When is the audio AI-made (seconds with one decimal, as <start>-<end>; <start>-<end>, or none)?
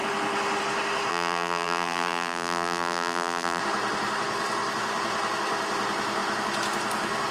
1.1-3.6